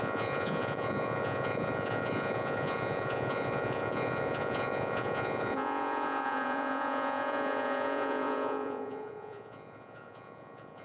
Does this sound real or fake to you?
fake